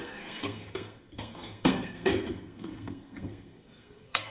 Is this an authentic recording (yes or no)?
no